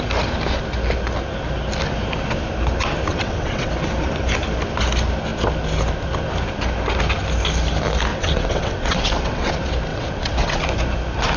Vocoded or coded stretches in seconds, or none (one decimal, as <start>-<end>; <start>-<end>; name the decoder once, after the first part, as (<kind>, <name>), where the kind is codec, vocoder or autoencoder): 3.1-3.7 (vocoder, WaveNeXt); 8.1-9.5; 9.9-10.6